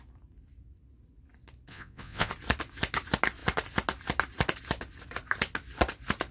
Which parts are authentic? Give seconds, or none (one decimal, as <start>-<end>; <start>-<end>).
0.0-1.7; 2.3-6.3